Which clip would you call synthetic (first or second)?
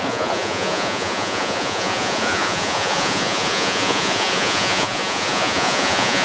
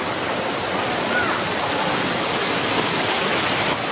first